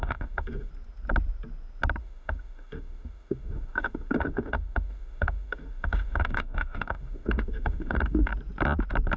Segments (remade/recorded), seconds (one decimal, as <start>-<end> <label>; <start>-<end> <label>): 0.0-0.7 remade; 0.7-2.0 recorded; 2.0-8.3 remade; 8.3-9.2 recorded